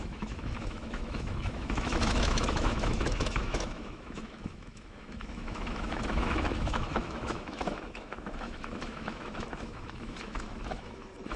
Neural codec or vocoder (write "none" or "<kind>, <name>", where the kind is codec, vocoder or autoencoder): autoencoder, DAC-VAE